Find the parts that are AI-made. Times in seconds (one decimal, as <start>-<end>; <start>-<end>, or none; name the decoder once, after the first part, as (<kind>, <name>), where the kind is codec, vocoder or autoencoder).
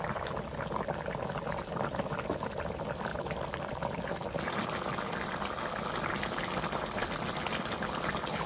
3.1-5.7 (vocoder, BigVGAN v2); 7.0-8.5